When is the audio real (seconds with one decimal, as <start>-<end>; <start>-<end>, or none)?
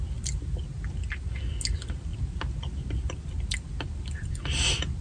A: 0.0-5.0